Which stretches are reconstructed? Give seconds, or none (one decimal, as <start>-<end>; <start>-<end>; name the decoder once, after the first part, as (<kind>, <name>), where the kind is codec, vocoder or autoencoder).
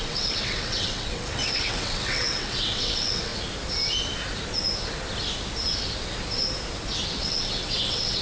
0.0-3.3 (vocoder, WaveNeXt); 7.1-8.2